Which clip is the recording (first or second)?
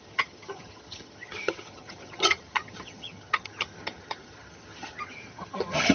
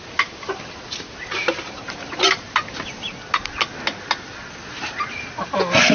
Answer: second